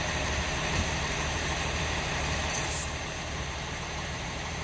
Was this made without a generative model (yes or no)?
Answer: no